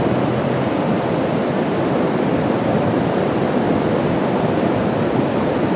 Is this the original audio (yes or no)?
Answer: no